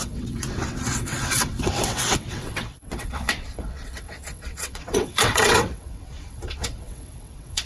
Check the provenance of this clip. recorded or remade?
remade